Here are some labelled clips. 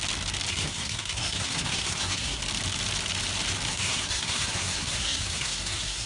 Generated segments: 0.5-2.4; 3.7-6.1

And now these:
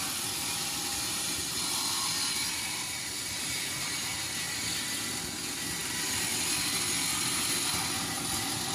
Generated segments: 0.9-4.5